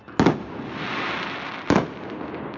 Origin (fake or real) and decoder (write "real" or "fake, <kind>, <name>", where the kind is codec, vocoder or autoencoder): real